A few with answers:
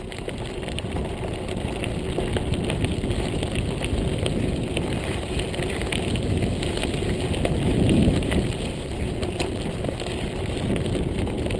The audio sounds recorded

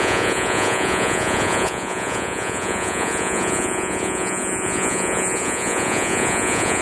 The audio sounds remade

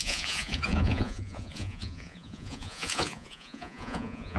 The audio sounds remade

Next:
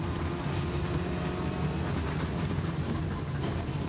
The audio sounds recorded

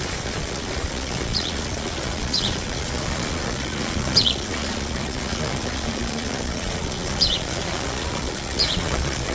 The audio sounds remade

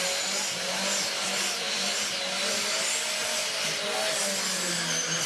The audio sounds recorded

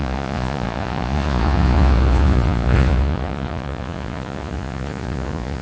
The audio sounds remade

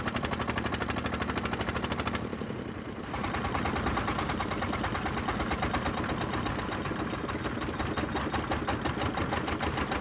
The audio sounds recorded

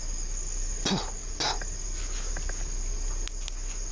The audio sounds recorded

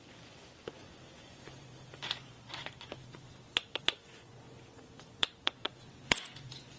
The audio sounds remade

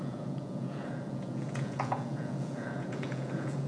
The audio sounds remade